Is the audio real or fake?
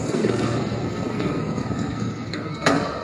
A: fake